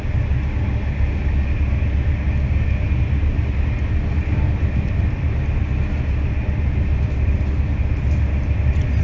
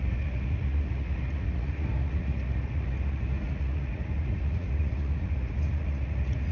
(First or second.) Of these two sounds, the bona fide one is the first